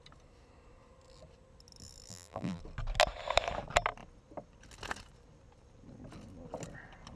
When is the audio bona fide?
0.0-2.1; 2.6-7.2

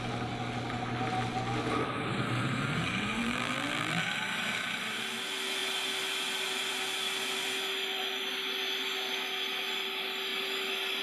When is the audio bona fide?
0.0-3.2; 4.0-11.0

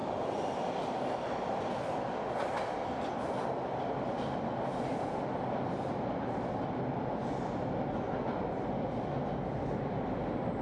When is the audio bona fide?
0.0-10.6

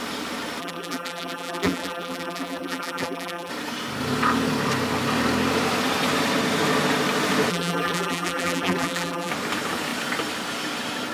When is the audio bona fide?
0.0-0.6; 3.5-7.5; 9.3-11.1

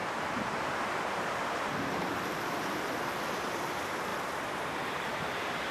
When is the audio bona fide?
4.1-5.1